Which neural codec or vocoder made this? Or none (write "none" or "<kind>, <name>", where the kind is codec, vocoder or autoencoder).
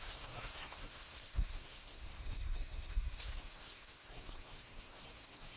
codec, SNAC